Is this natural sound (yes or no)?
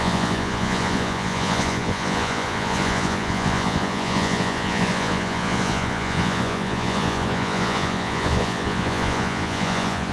no